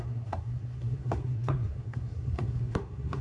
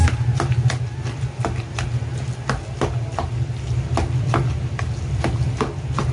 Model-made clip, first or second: first